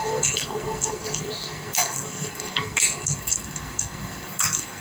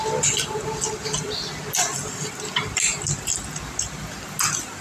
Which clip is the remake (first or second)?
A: first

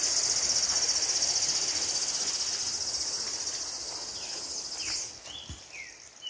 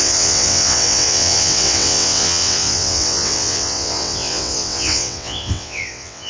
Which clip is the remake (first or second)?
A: second